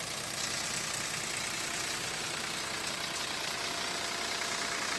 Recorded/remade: recorded